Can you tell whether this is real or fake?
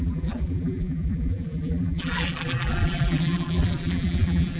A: fake